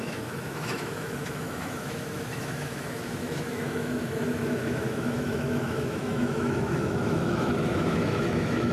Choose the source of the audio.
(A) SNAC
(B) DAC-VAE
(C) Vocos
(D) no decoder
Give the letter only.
B